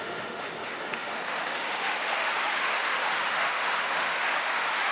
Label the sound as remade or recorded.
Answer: remade